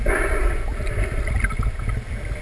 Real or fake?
real